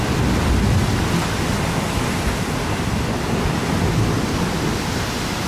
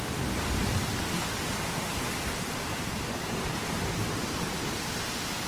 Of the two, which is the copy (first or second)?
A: second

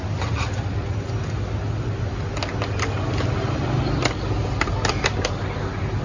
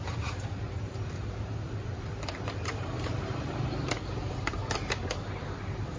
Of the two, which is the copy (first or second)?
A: second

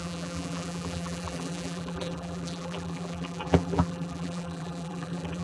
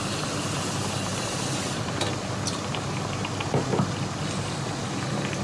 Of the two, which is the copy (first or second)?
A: first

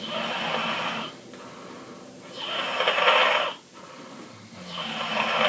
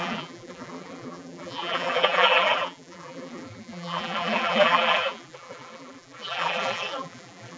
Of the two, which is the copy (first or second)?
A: second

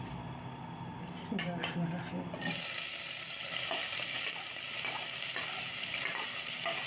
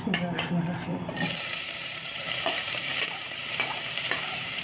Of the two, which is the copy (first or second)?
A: second